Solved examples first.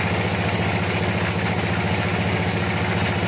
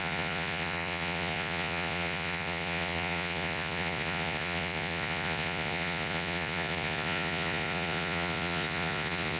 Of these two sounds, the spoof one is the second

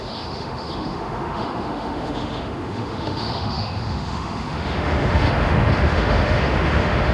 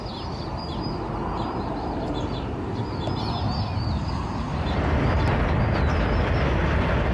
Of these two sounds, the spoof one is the first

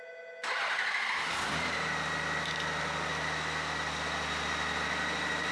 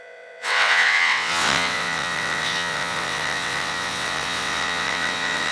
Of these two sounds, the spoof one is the second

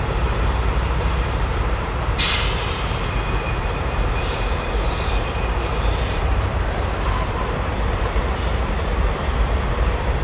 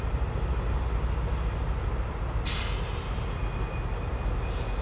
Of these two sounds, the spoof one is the first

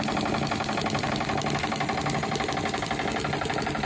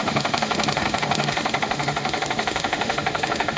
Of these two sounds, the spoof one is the second